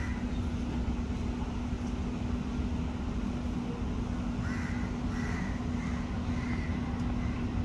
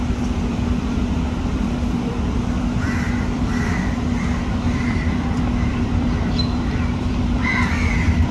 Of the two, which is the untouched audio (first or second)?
first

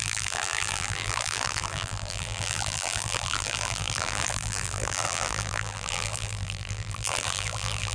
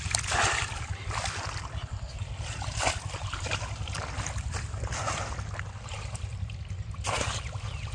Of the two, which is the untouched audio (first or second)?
second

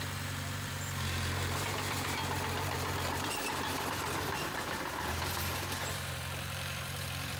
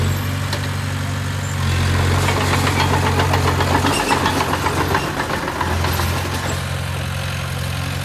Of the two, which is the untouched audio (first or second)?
second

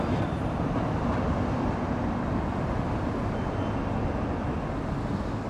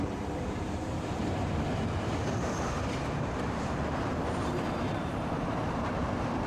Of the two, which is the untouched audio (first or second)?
first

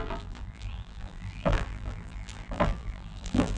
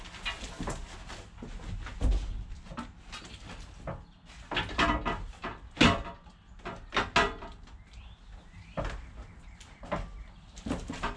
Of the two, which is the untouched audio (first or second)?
second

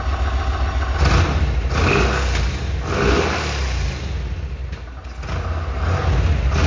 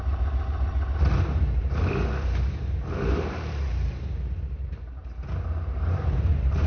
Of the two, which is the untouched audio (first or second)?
first